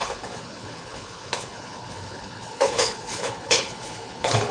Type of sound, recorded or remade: remade